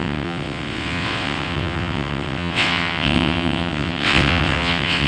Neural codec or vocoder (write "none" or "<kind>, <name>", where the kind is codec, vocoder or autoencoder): vocoder, WaveNeXt